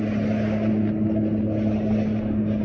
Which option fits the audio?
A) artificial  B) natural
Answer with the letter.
B